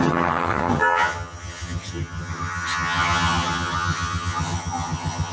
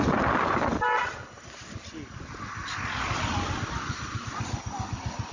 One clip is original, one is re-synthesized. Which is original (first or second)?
second